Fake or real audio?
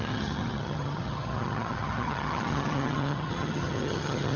fake